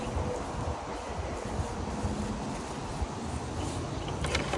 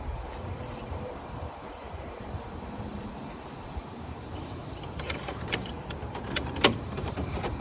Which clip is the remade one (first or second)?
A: second